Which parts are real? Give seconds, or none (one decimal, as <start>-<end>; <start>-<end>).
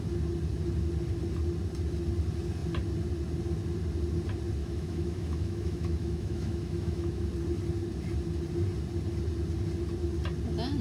0.0-4.6; 7.3-10.8